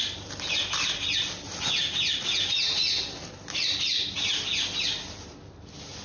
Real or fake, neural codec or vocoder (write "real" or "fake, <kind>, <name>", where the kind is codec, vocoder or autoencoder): real